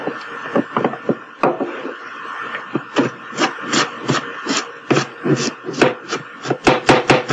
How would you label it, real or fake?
real